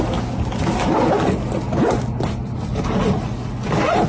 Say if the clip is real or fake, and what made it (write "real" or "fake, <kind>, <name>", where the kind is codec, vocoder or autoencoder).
real